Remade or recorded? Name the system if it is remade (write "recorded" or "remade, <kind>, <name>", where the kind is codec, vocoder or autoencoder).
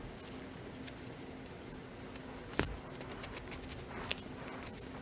recorded